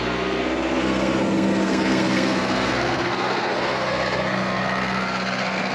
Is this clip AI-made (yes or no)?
yes